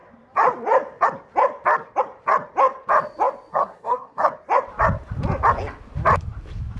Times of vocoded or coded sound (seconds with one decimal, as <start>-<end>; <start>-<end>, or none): 3.5-4.3

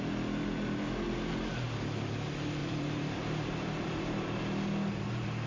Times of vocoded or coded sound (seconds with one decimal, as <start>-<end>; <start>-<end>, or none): 2.6-4.4

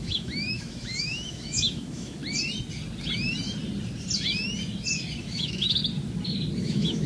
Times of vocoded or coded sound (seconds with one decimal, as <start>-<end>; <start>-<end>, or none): 0.0-2.2; 5.2-5.8; 6.6-7.1

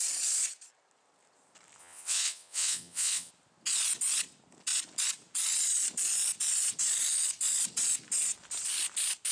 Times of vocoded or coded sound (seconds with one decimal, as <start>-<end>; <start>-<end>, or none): 1.8-3.3

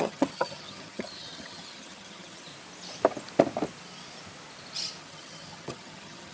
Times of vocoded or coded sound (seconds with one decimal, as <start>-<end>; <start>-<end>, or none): 0.0-2.5; 5.0-6.3